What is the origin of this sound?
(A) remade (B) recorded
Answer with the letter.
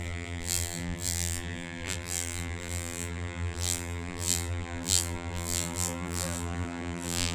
A